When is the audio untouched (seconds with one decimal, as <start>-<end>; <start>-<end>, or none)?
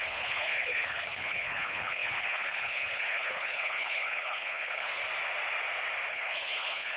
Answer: 5.0-6.1